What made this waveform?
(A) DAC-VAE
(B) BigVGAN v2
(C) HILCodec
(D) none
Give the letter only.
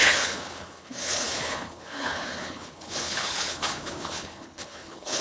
C